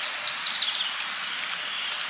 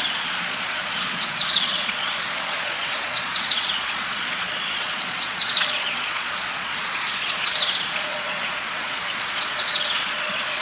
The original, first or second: first